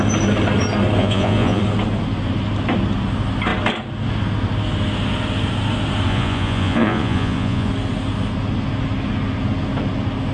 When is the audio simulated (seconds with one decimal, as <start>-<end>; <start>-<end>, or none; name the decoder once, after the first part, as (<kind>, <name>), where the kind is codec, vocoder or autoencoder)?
1.0-1.6 (vocoder, Vocos); 6.1-7.7